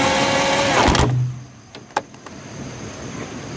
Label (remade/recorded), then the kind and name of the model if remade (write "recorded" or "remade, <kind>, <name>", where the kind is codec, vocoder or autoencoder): recorded